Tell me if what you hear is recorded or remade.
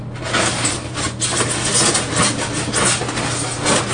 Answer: recorded